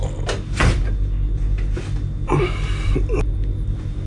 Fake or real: real